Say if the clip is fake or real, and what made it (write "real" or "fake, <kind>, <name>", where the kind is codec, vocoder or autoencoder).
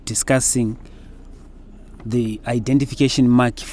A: real